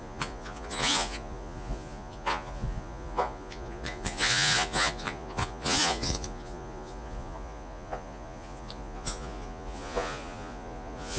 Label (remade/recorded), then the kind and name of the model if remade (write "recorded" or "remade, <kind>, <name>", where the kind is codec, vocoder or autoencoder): remade, vocoder, Vocos